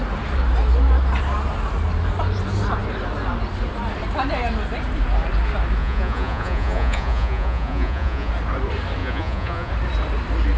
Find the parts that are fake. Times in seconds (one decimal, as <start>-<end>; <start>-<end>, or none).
5.8-8.3; 9.0-9.7